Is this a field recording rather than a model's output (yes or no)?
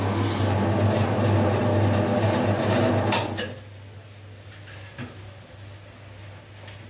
yes